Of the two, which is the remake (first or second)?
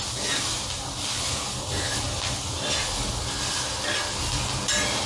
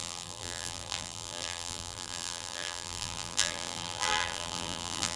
second